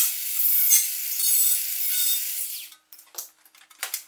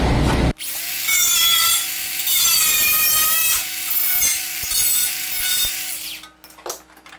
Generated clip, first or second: first